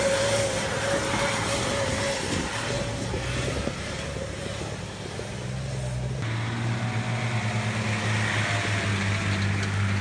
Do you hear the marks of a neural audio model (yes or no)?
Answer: no